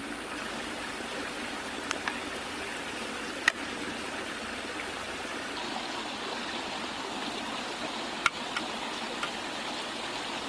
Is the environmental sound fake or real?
real